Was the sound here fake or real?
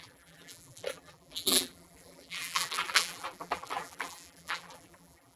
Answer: fake